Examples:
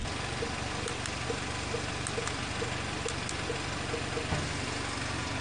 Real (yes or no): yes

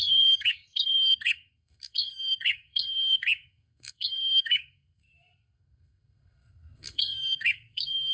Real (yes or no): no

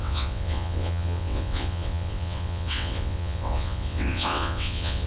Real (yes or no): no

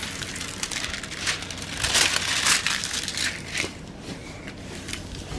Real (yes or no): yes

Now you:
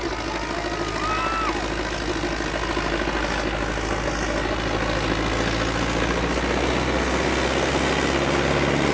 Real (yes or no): yes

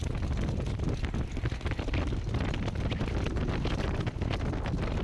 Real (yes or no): yes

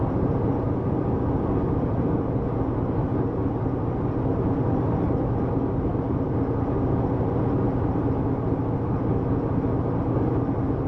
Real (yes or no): yes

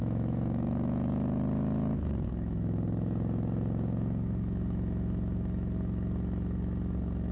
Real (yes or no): no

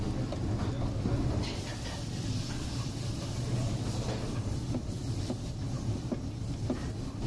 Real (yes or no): yes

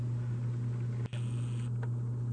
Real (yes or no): yes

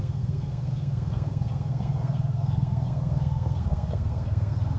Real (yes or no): no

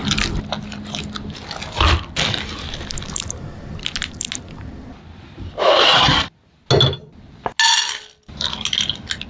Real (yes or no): yes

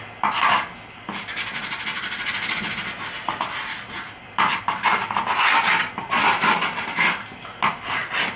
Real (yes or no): yes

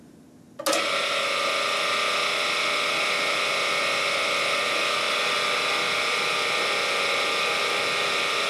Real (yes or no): yes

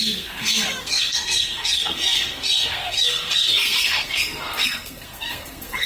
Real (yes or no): no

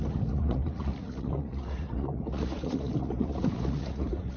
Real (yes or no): no